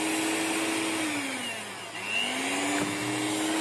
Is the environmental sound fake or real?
real